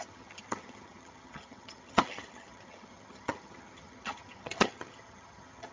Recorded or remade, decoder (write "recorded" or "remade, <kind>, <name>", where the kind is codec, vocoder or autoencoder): remade, vocoder, HiFi-GAN